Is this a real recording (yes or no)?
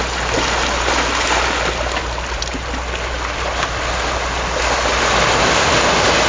yes